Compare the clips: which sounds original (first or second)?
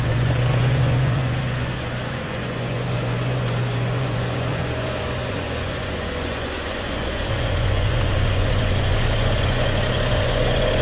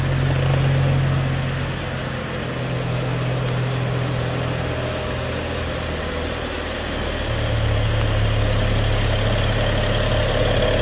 second